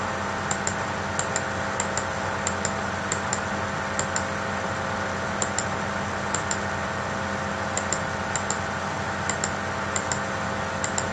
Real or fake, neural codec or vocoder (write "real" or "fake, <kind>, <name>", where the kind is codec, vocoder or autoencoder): real